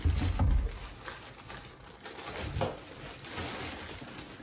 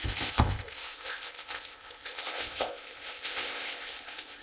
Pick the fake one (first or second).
second